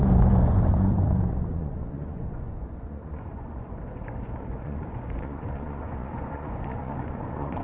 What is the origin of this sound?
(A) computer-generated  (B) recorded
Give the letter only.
A